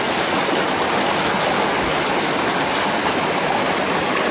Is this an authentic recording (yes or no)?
yes